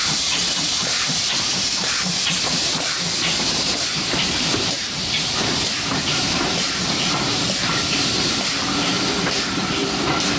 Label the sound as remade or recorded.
remade